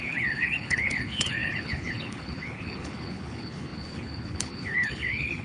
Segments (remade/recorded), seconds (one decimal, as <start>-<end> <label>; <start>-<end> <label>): 0.0-5.4 remade

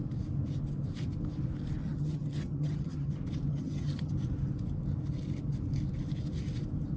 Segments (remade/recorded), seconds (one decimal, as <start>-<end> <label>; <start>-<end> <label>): 0.0-1.8 recorded; 1.8-3.1 remade; 3.1-3.5 recorded; 3.5-4.1 remade; 4.1-7.0 recorded

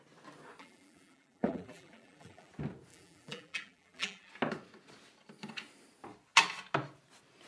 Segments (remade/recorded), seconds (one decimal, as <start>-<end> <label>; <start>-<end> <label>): 0.0-0.6 recorded; 0.6-2.5 remade; 2.5-2.9 recorded; 2.9-4.3 remade; 4.3-7.5 recorded